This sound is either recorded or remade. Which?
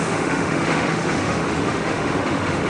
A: remade